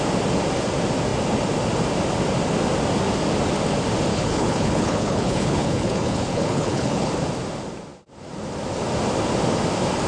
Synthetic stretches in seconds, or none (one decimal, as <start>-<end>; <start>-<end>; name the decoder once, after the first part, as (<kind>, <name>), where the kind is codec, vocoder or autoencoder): 4.1-7.1 (codec, HILCodec)